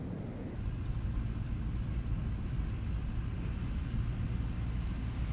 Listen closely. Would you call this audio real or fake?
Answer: real